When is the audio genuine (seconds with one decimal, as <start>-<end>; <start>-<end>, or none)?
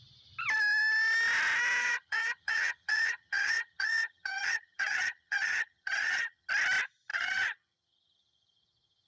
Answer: 0.0-1.8; 6.5-7.1